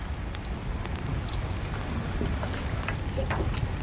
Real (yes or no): no